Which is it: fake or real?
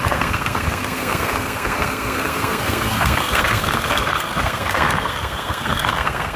fake